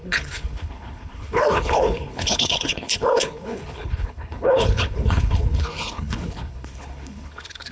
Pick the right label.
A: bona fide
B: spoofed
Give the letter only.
B